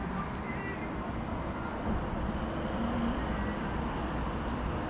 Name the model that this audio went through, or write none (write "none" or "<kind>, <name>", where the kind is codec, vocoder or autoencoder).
none